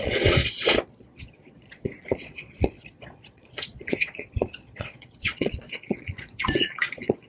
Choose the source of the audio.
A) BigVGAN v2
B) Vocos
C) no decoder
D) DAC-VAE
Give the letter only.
B